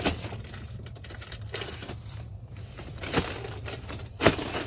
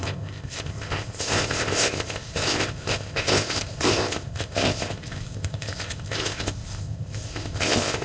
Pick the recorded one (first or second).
first